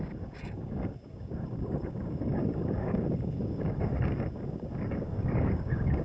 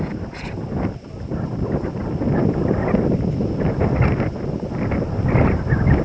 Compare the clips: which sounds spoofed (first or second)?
first